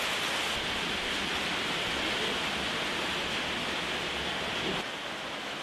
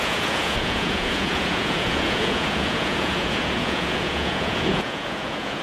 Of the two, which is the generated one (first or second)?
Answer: second